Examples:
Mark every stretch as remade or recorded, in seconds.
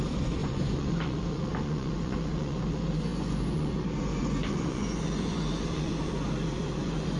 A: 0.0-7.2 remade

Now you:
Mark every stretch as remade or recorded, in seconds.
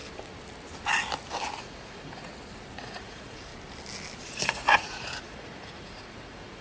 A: 0.0-1.6 recorded; 1.6-2.3 remade; 2.3-2.8 recorded; 2.8-3.5 remade; 3.5-4.2 recorded; 4.2-6.6 remade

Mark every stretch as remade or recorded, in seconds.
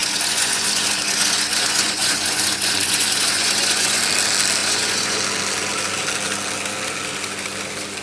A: 0.0-4.0 remade; 4.0-4.6 recorded; 4.6-5.2 remade; 5.2-8.0 recorded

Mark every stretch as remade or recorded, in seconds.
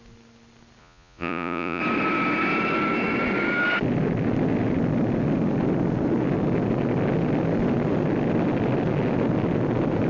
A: 0.0-0.8 recorded; 0.8-1.8 remade; 1.8-10.1 recorded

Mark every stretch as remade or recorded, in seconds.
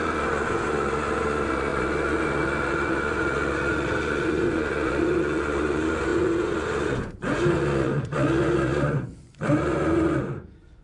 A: 0.0-10.8 remade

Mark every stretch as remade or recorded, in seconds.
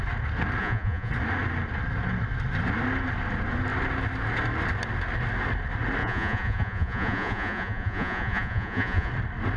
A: 0.0-0.6 recorded; 0.6-1.1 remade; 1.1-6.0 recorded; 6.0-9.1 remade; 9.1-9.6 recorded